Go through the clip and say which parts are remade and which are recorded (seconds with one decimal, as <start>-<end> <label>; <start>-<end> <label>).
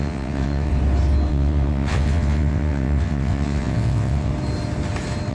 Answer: 0.0-0.7 remade; 0.7-1.3 recorded; 1.3-4.3 remade; 4.3-5.3 recorded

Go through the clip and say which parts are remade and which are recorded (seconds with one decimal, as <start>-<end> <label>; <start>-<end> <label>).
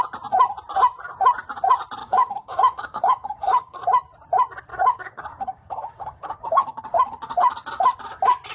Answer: 0.0-2.0 recorded; 2.0-3.8 remade; 3.8-4.7 recorded; 4.7-6.8 remade; 6.8-8.5 recorded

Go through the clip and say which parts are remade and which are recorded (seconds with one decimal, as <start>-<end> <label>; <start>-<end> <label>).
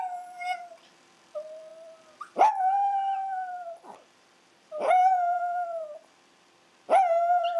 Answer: 0.0-7.6 remade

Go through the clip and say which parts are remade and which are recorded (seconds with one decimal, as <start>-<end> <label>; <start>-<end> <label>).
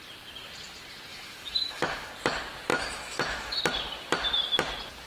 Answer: 0.0-1.1 recorded; 1.1-2.1 remade; 2.1-2.7 recorded; 2.7-3.6 remade; 3.6-5.1 recorded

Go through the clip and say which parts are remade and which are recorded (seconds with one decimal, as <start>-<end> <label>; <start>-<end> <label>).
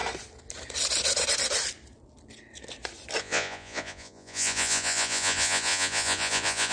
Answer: 0.0-3.2 recorded; 3.2-6.7 remade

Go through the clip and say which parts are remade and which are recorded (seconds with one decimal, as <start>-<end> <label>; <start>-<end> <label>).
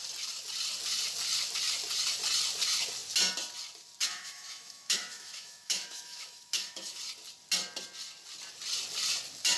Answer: 0.0-4.0 recorded; 4.0-7.0 remade; 7.0-9.6 recorded